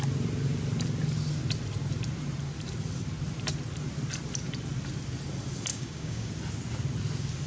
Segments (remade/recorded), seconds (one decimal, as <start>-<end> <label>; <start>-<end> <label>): 0.0-5.7 recorded; 5.7-6.3 remade; 6.3-7.5 recorded